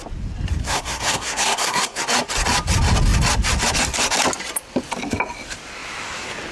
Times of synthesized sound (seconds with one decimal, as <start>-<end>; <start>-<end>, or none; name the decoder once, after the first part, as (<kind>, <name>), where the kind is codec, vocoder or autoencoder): 0.6-2.0 (codec, SNAC)